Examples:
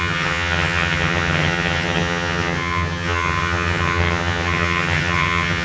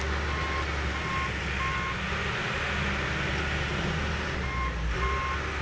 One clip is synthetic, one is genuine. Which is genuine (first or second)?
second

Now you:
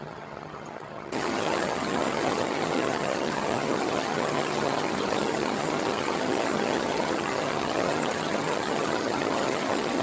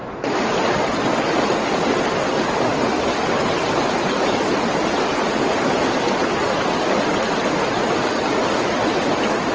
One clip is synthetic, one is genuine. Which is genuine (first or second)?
second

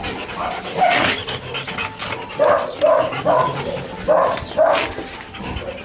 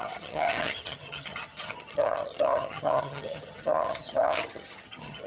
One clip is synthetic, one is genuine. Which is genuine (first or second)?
first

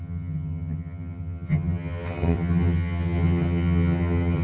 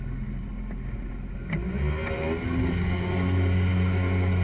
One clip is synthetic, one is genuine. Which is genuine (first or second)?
second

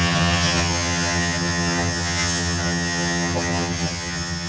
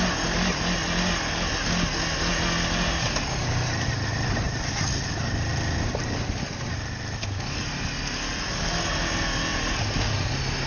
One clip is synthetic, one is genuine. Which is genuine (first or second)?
second